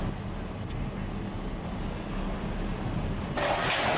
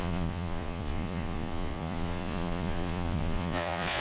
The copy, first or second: second